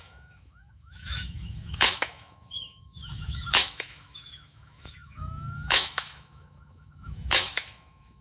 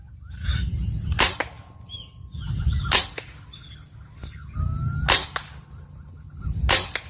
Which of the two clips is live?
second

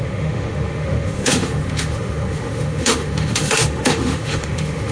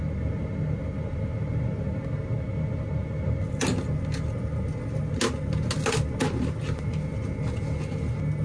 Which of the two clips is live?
second